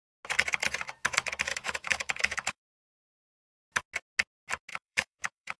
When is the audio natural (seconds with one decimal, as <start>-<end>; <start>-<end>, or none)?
0.0-1.5; 2.9-4.7